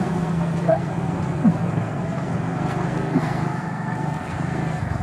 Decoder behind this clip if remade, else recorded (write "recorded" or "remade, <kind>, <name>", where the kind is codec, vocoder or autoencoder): remade, codec, SNAC